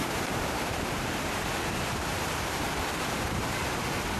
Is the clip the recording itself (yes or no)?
no